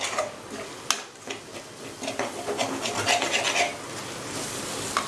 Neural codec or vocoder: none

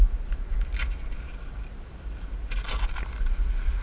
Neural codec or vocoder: none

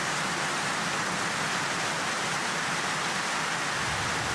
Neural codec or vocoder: none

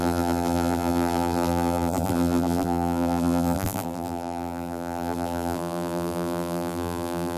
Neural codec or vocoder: vocoder, BigVGAN v2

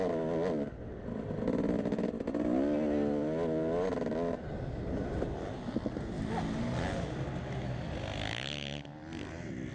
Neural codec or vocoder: none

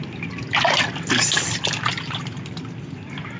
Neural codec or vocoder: none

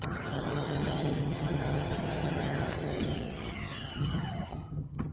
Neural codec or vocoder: vocoder, HiFi-GAN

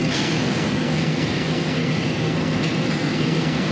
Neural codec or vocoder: codec, SNAC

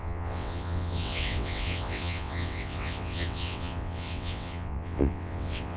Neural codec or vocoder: vocoder, WaveNeXt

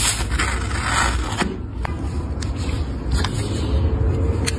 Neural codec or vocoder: none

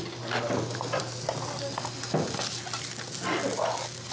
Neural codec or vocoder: none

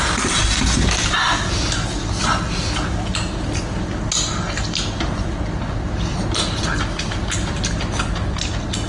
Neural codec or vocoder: none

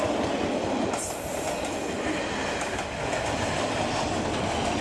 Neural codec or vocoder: none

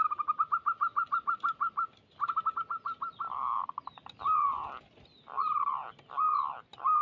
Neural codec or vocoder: none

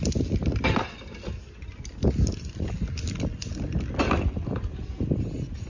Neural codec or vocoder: none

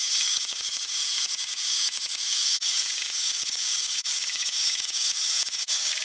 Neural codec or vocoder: codec, DAC